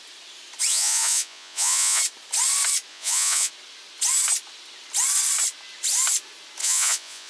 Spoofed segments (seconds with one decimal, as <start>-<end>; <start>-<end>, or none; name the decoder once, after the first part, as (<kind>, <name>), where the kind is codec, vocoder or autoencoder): 0.7-2.0 (vocoder, Vocos); 2.9-3.5; 6.6-7.3